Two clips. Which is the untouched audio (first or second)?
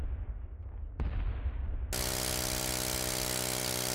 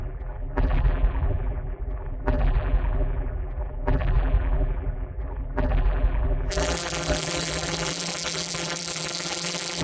first